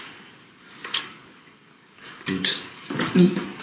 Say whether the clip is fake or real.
fake